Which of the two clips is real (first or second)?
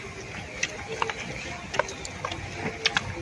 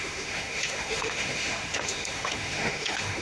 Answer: first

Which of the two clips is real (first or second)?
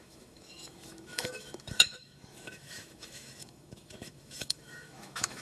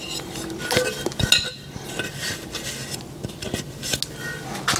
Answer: second